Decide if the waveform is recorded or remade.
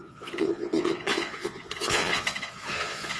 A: remade